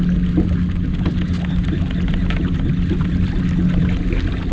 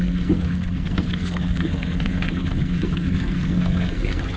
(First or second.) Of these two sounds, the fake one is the second